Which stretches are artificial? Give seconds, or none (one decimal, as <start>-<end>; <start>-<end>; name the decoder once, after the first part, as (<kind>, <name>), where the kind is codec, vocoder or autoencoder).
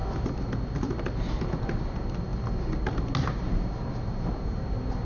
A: none